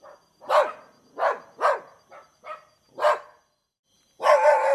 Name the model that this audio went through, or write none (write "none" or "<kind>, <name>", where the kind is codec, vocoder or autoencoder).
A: none